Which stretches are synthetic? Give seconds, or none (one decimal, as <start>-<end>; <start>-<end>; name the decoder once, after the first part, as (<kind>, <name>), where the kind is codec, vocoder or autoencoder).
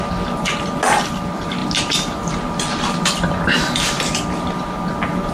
1.6-2.3 (vocoder, BigVGAN v2)